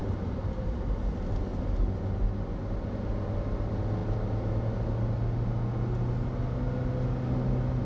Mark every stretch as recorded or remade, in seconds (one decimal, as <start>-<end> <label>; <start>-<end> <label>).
0.0-7.8 recorded